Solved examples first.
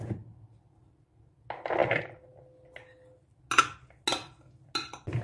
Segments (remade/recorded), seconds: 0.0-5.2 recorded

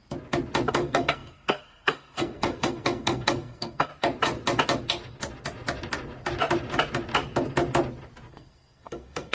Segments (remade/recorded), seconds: 0.0-0.7 recorded; 0.7-3.9 remade; 3.9-8.3 recorded; 8.3-9.3 remade